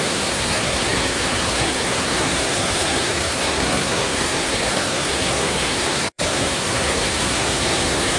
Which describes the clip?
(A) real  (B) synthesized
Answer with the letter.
B